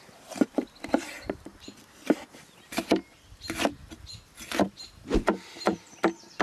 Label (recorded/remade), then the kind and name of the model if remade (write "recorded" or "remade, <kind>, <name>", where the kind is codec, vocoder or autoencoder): recorded